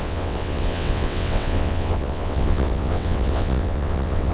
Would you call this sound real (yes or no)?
no